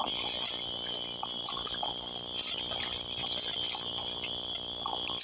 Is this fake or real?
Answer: real